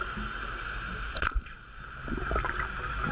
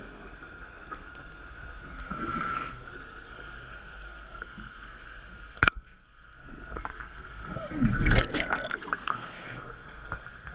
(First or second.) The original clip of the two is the first